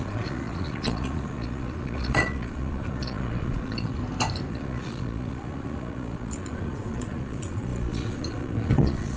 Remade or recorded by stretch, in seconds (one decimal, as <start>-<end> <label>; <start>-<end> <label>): 0.0-4.0 remade; 4.0-4.5 recorded; 4.5-9.2 remade